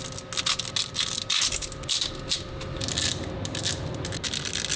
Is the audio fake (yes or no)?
no